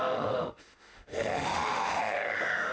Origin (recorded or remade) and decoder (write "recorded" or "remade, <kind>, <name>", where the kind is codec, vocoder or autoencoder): remade, autoencoder, DAC-VAE